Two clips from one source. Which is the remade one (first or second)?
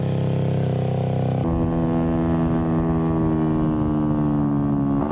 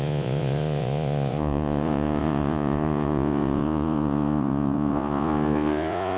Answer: second